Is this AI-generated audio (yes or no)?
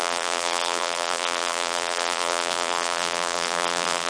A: yes